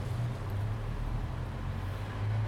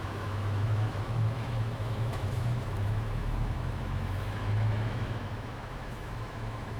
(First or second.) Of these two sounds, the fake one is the second